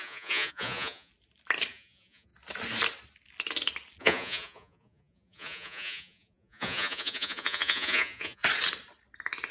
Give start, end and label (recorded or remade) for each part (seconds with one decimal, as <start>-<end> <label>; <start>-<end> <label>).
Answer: 0.0-1.1 remade; 1.1-1.7 recorded; 1.7-2.3 remade; 2.3-4.0 recorded; 4.0-8.4 remade; 8.4-9.5 recorded

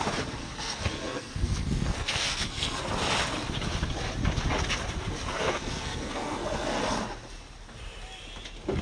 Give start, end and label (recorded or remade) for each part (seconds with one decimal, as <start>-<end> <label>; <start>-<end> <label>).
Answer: 0.0-0.4 recorded; 0.4-2.8 remade; 2.8-5.3 recorded; 5.3-6.8 remade; 6.8-8.8 recorded